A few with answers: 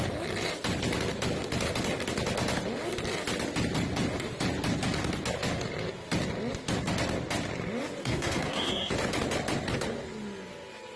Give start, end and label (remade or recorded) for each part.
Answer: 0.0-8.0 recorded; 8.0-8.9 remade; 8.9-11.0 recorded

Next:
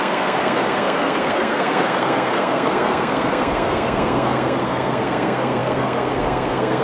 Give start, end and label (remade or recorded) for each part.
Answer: 0.0-6.8 remade

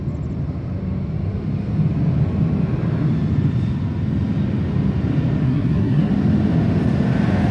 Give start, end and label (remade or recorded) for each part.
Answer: 0.0-5.4 recorded; 5.4-6.1 remade; 6.1-7.5 recorded

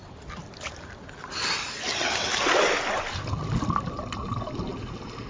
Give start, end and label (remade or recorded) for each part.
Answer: 0.0-5.3 recorded

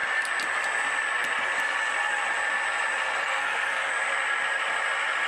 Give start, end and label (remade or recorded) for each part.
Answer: 0.0-3.2 recorded; 3.2-3.9 remade; 3.9-5.3 recorded

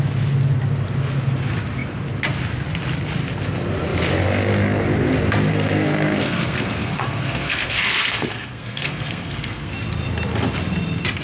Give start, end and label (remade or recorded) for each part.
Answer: 0.0-5.5 recorded; 5.5-9.7 remade; 9.7-11.2 recorded

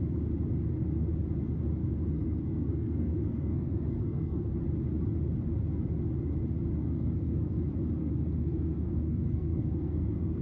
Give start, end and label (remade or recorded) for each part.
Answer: 0.0-1.8 recorded; 1.8-4.5 remade; 4.5-6.8 recorded; 6.8-7.6 remade; 7.6-8.0 recorded; 8.0-10.4 remade